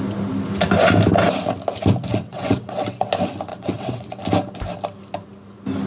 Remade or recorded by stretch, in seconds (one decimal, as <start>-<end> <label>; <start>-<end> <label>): 0.0-2.1 recorded; 2.1-3.1 remade; 3.1-3.5 recorded; 3.5-4.2 remade; 4.2-5.9 recorded